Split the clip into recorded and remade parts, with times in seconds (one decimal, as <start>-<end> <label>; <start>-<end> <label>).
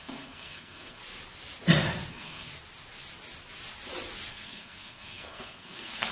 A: 0.0-1.0 remade; 1.0-2.1 recorded; 2.1-2.5 remade; 2.5-4.3 recorded; 4.3-6.1 remade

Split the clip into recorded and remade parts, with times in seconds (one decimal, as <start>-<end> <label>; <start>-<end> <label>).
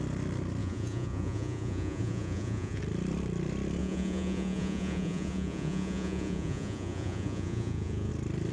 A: 0.0-0.6 recorded; 0.6-2.8 remade; 2.8-3.8 recorded; 3.8-8.1 remade; 8.1-8.5 recorded